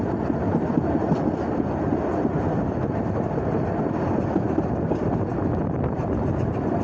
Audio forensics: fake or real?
real